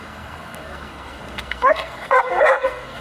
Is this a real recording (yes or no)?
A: no